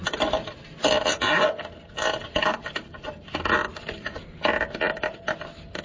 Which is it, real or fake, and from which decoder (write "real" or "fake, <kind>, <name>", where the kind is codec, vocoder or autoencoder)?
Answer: real